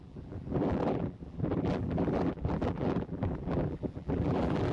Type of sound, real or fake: fake